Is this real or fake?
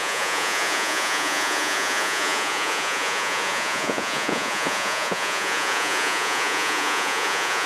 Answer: fake